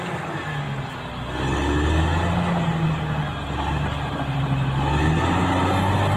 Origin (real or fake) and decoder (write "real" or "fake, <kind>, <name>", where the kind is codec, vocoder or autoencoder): real